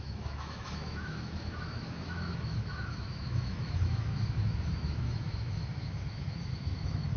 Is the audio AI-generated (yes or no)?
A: yes